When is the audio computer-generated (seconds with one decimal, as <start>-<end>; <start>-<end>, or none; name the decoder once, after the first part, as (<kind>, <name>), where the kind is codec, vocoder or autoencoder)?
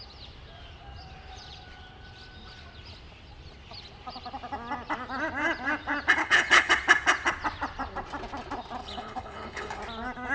6.2-6.7 (codec, HILCodec); 8.8-9.8